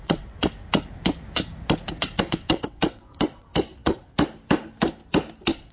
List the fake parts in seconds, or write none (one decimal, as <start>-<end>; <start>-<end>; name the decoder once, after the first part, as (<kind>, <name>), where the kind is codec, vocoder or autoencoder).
0.0-0.4 (vocoder, WaveNeXt); 2.2-3.5